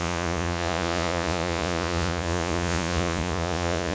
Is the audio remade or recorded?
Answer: remade